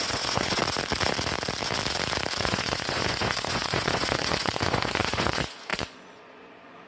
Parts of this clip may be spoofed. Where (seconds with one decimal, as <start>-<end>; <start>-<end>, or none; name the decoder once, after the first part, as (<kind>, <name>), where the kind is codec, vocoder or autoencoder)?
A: 0.0-0.6 (vocoder, Vocos); 2.4-6.9